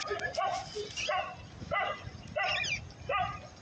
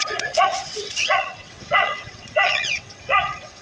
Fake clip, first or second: second